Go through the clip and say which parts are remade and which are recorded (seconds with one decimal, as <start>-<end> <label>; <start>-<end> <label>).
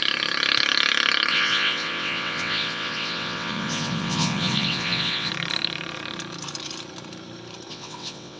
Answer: 0.0-1.3 recorded; 1.3-5.3 remade; 5.3-7.7 recorded; 7.7-8.4 remade